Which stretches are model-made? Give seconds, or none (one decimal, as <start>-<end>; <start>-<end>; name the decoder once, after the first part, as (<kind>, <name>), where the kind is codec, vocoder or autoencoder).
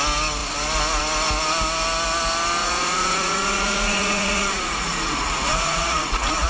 2.6-6.5 (vocoder, Vocos)